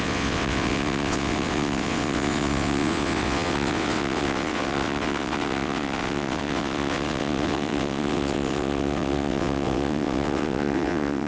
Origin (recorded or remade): remade